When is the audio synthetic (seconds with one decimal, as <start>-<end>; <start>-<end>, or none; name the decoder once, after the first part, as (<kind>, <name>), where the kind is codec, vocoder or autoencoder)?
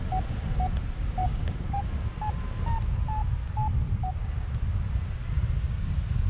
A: 1.2-1.8 (codec, DAC)